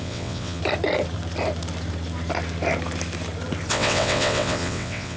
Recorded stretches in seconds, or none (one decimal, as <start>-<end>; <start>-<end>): 0.6-3.7